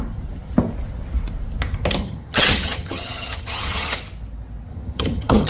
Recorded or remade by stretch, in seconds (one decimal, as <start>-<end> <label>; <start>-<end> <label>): 0.0-2.0 recorded; 2.0-4.0 remade; 4.0-4.7 recorded; 4.7-5.5 remade